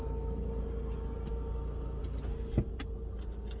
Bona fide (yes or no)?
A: yes